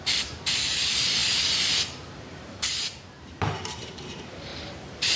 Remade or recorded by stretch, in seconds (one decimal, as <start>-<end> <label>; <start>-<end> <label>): 0.0-5.2 remade